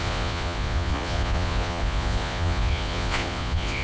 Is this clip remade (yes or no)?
yes